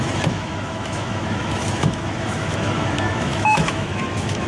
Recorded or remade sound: remade